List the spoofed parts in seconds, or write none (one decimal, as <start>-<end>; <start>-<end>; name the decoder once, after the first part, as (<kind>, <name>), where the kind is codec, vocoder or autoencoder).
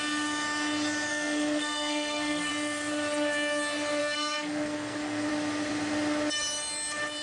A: 1.1-2.5 (codec, SNAC); 4.0-5.3